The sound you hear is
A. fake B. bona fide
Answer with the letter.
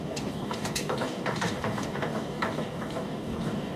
A